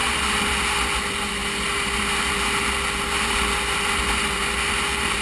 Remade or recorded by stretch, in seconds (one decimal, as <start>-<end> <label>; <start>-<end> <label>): 0.0-5.2 recorded